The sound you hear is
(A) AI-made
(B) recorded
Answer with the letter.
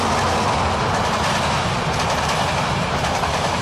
B